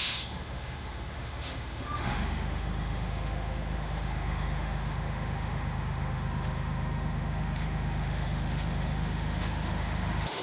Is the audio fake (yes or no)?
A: yes